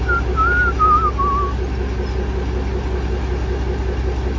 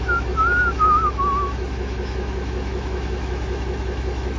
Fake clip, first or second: second